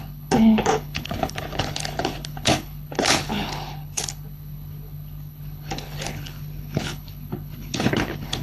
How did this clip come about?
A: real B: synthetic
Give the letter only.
B